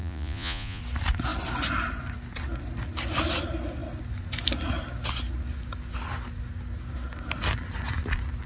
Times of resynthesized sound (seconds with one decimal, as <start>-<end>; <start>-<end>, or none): 0.0-0.8